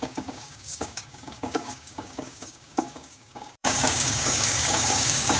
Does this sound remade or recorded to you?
remade